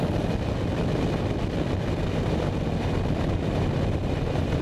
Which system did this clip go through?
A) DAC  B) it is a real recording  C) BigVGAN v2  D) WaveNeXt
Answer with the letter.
B